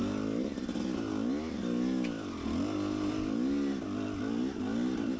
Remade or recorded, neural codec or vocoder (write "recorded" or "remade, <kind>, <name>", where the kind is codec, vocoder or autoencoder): recorded